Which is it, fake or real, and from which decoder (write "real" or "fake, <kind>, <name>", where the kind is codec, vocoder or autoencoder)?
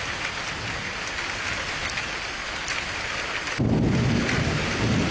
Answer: real